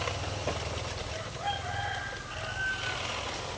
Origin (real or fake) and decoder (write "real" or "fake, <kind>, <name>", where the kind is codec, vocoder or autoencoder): real